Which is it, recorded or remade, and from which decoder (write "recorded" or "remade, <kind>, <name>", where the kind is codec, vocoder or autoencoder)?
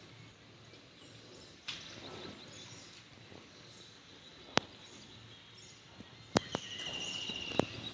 recorded